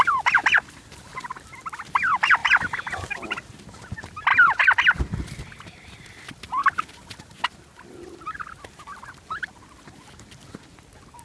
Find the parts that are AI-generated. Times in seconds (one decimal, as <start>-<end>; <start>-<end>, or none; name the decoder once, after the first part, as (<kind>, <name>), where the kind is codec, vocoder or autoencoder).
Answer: 0.4-1.7 (vocoder, BigVGAN v2); 2.4-3.1